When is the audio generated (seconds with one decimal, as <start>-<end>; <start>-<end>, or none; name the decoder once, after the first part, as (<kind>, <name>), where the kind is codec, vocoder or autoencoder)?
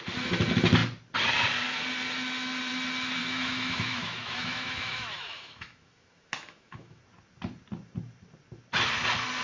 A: 3.2-7.0 (autoencoder, DAC-VAE)